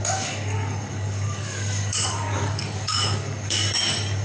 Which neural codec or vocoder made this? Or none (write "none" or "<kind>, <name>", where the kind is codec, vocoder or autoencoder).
codec, DAC